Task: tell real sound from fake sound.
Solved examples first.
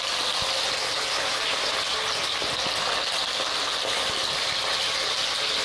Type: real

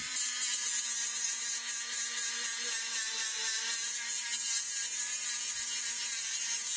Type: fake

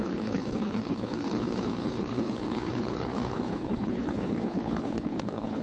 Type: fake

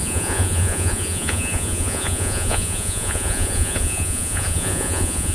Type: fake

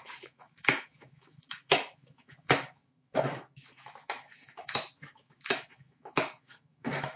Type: fake